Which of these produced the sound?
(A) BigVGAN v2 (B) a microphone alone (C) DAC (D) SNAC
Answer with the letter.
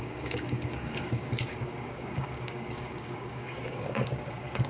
C